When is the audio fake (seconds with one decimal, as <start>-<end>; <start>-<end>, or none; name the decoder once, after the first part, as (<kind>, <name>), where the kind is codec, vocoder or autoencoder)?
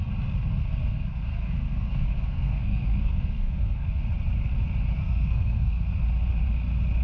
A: 0.6-4.0 (codec, SNAC); 5.0-5.9